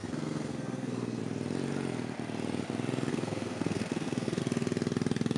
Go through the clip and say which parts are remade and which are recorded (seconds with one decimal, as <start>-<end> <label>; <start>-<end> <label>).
0.0-1.2 remade; 1.2-3.1 recorded; 3.1-4.4 remade; 4.4-5.4 recorded